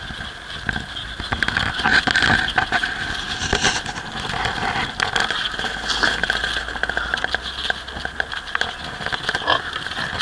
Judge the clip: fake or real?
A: real